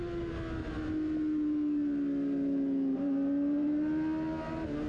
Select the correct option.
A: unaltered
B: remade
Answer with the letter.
A